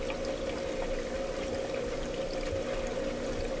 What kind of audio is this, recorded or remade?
recorded